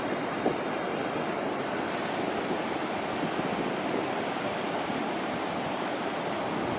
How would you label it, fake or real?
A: real